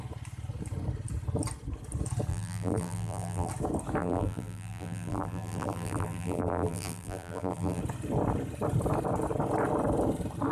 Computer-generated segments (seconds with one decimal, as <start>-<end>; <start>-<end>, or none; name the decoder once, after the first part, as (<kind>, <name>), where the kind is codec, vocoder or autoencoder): 2.3-3.5 (vocoder, BigVGAN v2); 4.0-7.8